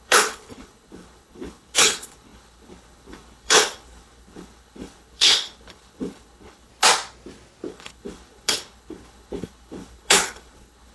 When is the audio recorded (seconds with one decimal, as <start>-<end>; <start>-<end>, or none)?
6.7-7.7